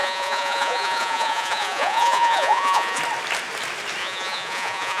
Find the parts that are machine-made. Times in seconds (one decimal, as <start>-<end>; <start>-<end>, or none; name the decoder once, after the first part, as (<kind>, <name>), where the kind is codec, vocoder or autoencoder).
0.0-3.0 (vocoder, Vocos); 4.0-5.0